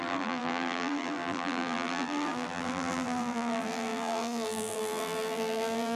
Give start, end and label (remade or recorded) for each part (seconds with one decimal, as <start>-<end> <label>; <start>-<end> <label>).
0.0-6.0 remade